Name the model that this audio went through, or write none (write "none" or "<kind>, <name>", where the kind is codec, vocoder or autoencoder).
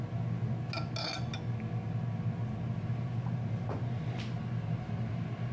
none